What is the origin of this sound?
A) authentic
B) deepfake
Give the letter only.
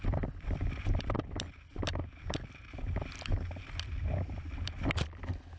A